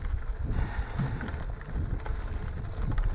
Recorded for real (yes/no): yes